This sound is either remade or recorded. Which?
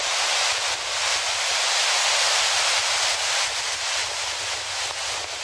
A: recorded